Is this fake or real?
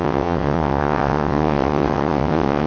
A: fake